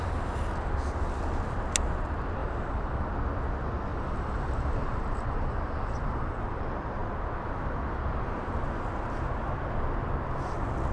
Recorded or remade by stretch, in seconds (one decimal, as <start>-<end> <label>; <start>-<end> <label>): 0.0-2.4 recorded; 2.4-3.1 remade; 3.1-3.9 recorded; 3.9-6.6 remade; 6.6-10.9 recorded